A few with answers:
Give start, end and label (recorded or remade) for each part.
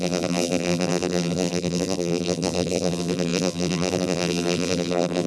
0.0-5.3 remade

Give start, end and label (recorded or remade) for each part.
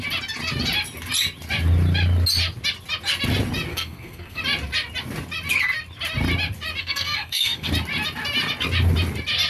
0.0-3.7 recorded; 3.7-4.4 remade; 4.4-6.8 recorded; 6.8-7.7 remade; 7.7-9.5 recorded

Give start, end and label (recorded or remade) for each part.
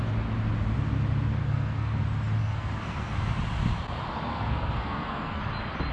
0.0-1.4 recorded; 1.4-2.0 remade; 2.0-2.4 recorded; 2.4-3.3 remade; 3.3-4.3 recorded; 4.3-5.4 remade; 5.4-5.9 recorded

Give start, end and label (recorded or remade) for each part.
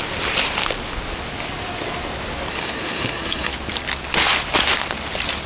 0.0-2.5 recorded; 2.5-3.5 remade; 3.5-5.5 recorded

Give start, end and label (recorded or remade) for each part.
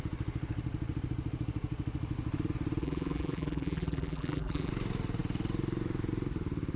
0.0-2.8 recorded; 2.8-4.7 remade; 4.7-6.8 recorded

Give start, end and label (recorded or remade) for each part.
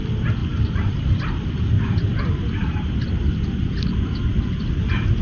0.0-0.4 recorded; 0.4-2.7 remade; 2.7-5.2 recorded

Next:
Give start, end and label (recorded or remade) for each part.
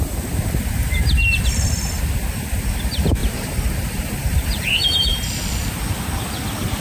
0.0-3.2 recorded; 3.2-4.6 remade; 4.6-6.8 recorded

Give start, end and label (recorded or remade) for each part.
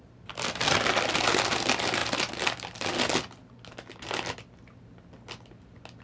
0.0-6.0 recorded